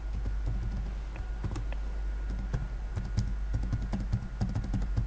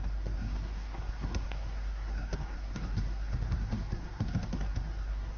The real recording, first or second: first